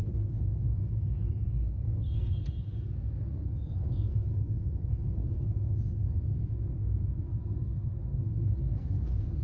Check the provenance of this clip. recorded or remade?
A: remade